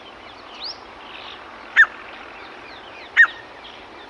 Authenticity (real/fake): real